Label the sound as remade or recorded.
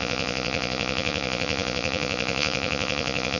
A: remade